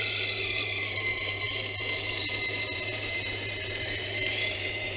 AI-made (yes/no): yes